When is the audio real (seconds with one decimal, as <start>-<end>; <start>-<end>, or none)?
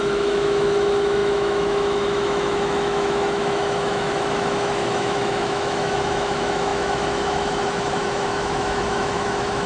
none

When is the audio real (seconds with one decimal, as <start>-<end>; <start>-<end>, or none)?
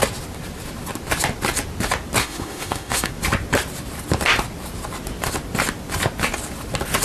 0.0-2.2; 3.1-7.0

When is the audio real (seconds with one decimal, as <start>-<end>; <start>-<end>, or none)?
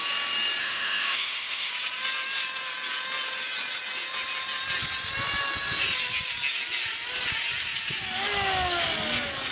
0.0-0.6; 1.7-9.5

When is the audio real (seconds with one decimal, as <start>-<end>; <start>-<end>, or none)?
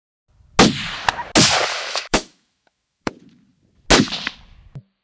0.0-1.7; 3.1-5.0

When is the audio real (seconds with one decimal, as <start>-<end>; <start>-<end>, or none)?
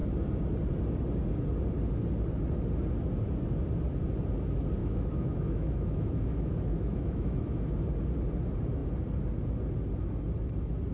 0.0-4.8; 7.4-10.9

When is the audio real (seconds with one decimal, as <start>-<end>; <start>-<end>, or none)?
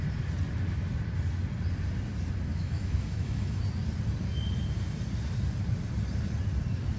0.0-2.5; 3.6-7.0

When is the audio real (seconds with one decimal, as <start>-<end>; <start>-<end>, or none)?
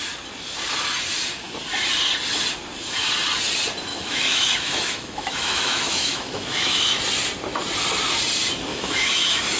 0.0-3.9; 7.0-8.7